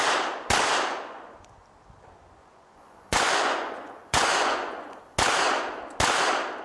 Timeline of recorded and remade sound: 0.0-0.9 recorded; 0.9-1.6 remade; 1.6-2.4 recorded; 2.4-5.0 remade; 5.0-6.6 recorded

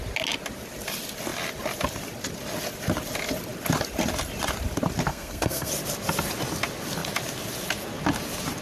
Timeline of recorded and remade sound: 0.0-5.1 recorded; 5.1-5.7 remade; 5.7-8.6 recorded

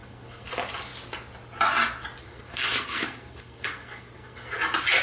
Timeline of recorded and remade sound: 0.0-0.5 remade; 0.5-2.2 recorded; 2.2-4.5 remade; 4.5-5.0 recorded

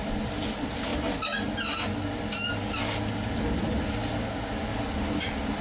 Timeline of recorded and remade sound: 0.0-5.6 recorded

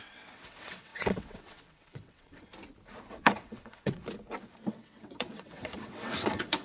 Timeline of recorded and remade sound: 0.0-2.5 remade; 2.5-3.1 recorded; 3.1-4.0 remade; 4.0-4.7 recorded; 4.7-6.6 remade